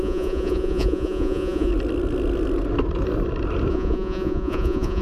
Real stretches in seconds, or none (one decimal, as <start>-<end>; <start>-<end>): 1.7-3.7